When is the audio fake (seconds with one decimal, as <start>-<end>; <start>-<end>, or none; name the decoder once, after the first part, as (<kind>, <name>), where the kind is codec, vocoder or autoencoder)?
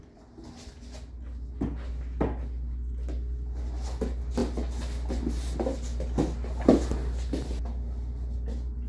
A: none